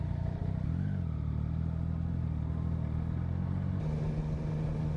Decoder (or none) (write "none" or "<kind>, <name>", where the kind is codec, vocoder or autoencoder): none